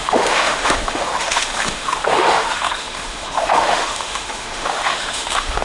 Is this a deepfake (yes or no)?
yes